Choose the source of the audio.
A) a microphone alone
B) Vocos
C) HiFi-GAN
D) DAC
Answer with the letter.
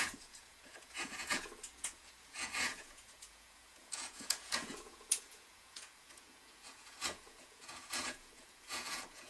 B